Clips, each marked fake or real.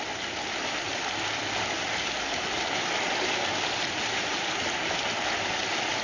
real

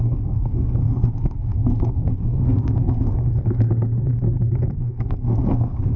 fake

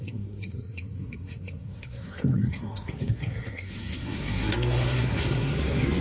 fake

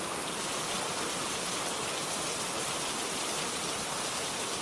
real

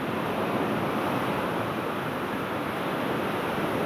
real